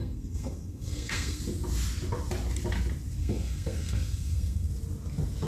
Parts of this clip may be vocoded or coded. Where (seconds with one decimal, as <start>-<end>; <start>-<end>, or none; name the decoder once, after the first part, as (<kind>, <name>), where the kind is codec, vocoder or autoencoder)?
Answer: 0.0-1.4 (codec, SNAC); 3.2-4.7